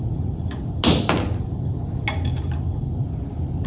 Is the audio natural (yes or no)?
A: yes